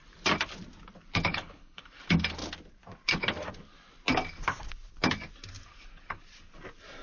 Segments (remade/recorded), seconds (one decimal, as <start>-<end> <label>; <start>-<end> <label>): 0.0-1.3 recorded; 1.3-2.0 remade; 2.0-5.7 recorded; 5.7-6.2 remade; 6.2-7.0 recorded